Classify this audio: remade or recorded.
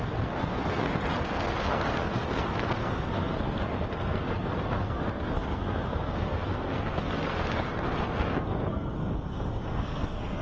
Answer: remade